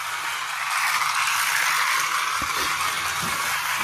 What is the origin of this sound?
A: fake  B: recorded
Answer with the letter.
B